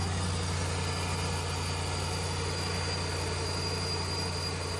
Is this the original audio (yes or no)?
yes